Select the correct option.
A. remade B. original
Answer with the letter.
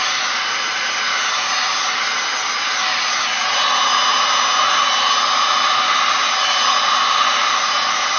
B